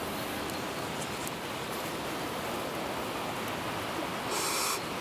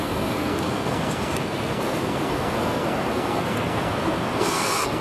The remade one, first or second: second